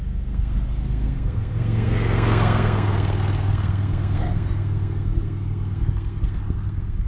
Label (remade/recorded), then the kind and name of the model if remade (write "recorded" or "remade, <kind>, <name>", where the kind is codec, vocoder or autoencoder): remade, codec, SNAC